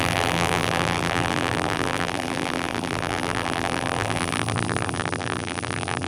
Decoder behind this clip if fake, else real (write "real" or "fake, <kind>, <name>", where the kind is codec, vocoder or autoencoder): fake, vocoder, BigVGAN v2